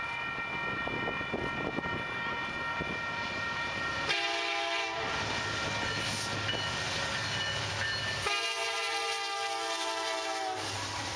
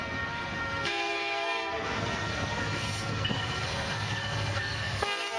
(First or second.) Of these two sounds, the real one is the first